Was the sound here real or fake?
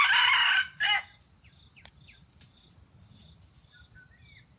real